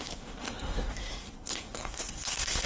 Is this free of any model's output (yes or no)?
no